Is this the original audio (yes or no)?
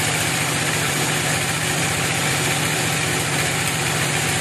no